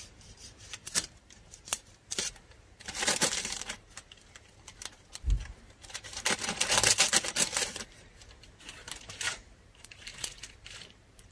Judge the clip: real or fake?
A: fake